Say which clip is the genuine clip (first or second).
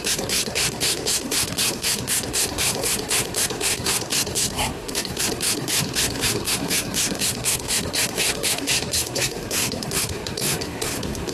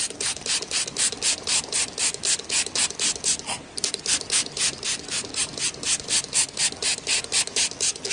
second